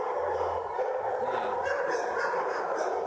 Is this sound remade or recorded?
recorded